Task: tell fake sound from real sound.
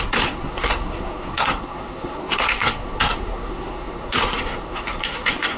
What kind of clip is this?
fake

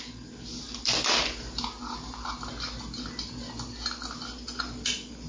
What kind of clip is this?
real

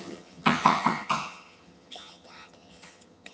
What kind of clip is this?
fake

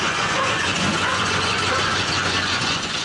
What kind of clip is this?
fake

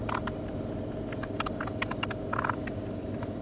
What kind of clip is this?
fake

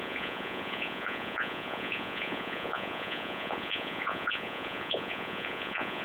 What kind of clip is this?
fake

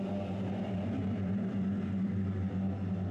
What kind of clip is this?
real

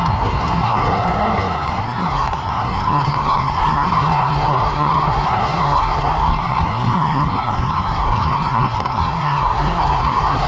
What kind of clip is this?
fake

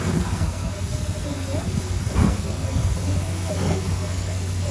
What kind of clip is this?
fake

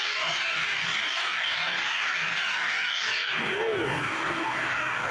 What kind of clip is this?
fake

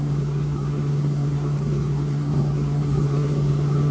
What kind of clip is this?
fake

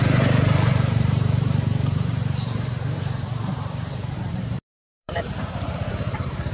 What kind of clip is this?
fake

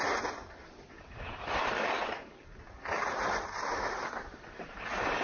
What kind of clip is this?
real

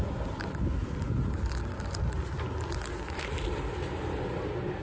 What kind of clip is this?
real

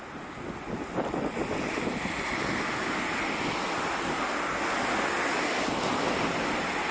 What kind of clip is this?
real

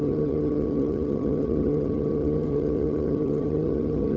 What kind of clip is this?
fake